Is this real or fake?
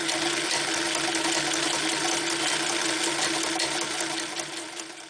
real